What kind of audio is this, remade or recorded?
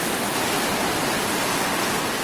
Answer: recorded